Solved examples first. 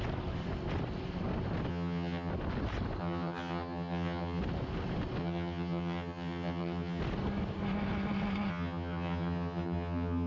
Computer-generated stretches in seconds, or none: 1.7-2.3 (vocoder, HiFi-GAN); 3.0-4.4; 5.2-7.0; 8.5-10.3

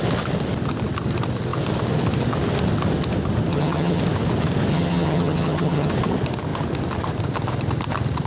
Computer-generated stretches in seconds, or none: 3.5-4.0 (vocoder, HiFi-GAN); 4.7-5.9

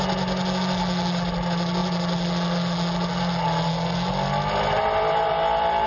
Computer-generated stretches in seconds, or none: none